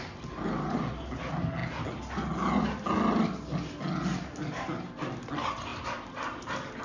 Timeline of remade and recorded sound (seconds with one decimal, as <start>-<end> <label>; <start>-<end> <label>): 0.0-6.8 recorded